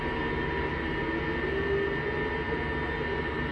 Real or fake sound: real